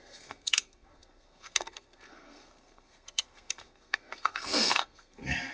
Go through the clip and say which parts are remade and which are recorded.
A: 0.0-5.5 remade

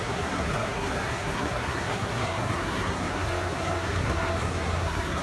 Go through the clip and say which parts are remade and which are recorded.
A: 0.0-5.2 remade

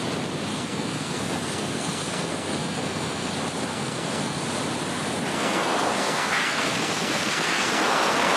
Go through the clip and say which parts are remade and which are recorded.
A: 0.0-0.5 recorded; 0.5-3.3 remade; 3.3-3.7 recorded; 3.7-4.4 remade; 4.4-5.3 recorded; 5.3-8.4 remade

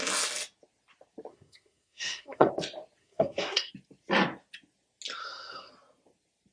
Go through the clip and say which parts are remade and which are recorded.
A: 0.0-1.3 recorded; 1.3-2.5 remade; 2.5-3.0 recorded; 3.0-3.7 remade; 3.7-5.2 recorded; 5.2-5.7 remade; 5.7-6.5 recorded

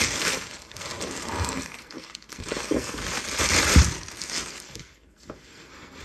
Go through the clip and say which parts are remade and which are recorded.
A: 0.0-3.0 remade; 3.0-4.1 recorded; 4.1-6.0 remade

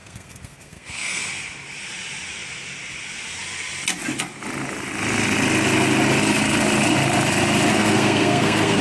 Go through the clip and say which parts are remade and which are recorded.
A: 0.0-1.2 remade; 1.2-7.7 recorded; 7.7-8.8 remade

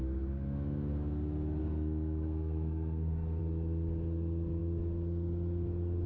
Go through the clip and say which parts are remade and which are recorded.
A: 0.0-1.6 recorded; 1.6-3.4 remade; 3.4-6.1 recorded

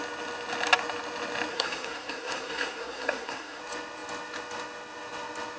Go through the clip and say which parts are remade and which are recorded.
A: 0.0-1.5 recorded; 1.5-3.6 remade; 3.6-5.6 recorded